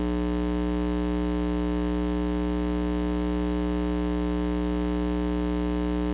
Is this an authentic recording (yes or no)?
yes